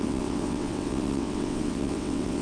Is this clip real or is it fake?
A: fake